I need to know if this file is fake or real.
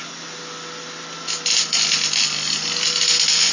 real